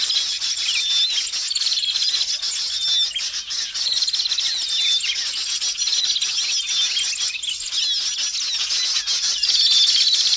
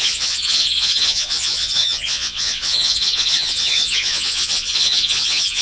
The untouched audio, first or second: first